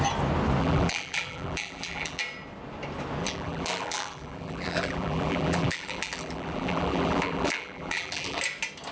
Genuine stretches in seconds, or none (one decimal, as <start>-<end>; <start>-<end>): 0.0-0.6; 2.2-3.2; 8.4-8.9